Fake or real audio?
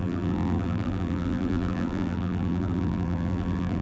fake